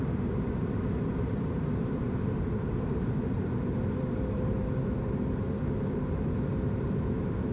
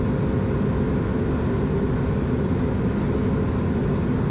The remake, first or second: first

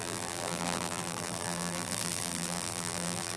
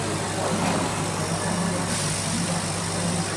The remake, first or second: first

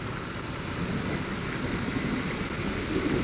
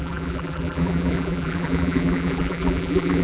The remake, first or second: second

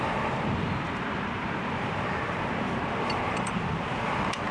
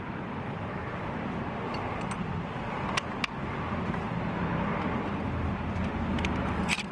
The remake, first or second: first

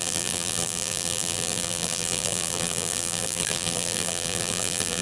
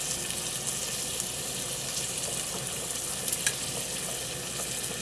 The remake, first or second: first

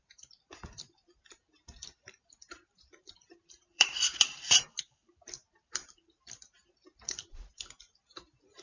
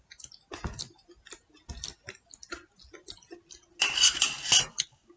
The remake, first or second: first